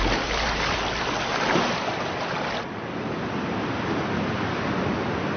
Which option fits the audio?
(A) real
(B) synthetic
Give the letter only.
A